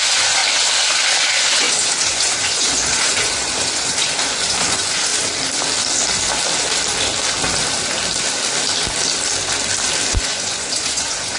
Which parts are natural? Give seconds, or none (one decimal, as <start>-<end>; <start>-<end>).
0.4-1.5; 5.1-10.1